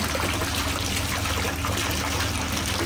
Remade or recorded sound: recorded